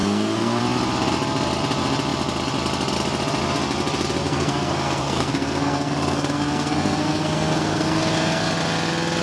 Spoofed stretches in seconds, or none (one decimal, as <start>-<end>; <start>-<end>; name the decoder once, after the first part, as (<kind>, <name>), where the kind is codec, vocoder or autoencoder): 0.0-0.6 (codec, SNAC); 4.2-8.5

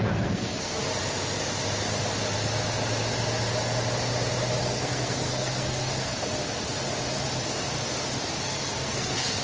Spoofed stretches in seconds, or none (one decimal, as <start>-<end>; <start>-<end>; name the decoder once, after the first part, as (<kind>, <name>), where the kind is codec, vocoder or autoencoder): 0.0-0.8 (codec, SNAC); 4.6-6.1; 8.4-9.4

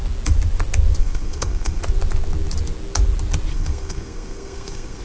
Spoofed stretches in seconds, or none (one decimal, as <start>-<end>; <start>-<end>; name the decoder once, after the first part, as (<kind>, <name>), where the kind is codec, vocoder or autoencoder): 1.0-1.8 (codec, SNAC); 3.5-5.0

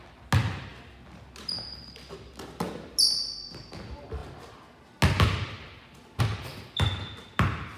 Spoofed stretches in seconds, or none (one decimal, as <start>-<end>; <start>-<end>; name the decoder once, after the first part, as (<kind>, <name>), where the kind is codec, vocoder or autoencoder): none